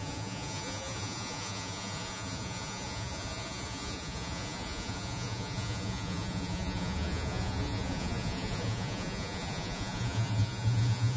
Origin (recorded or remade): remade